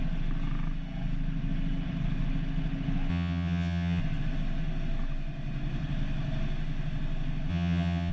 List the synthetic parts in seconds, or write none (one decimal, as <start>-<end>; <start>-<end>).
3.1-4.0; 7.5-8.1